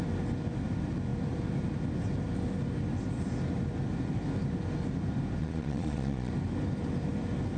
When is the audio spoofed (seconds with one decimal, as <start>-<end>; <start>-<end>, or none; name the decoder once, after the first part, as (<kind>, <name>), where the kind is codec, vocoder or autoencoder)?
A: 5.4-6.3 (vocoder, Vocos)

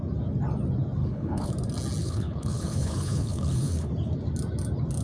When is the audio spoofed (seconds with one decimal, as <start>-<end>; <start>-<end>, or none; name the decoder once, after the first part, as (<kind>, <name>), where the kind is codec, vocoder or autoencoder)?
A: 1.0-1.5 (codec, HILCodec); 2.0-3.9

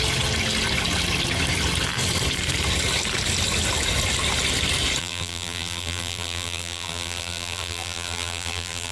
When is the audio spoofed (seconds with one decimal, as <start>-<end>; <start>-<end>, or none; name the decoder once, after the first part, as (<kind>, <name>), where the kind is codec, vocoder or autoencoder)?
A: 5.0-8.9 (vocoder, BigVGAN v2)

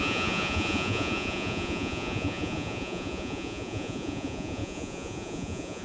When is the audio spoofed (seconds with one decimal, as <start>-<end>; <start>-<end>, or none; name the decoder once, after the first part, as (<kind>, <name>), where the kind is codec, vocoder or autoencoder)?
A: 0.0-5.8 (vocoder, Vocos)

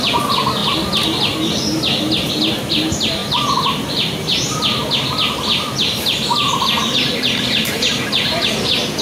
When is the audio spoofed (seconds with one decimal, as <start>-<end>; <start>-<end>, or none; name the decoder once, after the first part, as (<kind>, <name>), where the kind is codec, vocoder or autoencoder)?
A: none

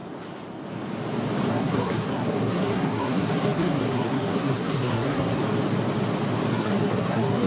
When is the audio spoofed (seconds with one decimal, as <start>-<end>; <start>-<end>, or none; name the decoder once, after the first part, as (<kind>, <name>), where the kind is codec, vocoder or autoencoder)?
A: 1.5-5.4 (codec, SNAC); 6.5-7.5

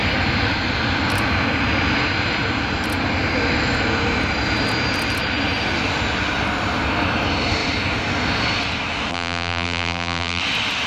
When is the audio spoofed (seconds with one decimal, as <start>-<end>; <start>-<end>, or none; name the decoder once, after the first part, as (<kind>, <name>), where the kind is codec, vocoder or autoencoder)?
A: 9.1-10.4 (vocoder, BigVGAN v2)

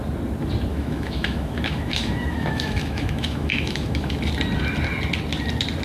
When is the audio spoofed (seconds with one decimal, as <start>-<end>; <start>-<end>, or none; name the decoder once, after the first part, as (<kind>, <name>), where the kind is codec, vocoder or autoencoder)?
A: 0.7-4.2 (autoencoder, DAC-VAE)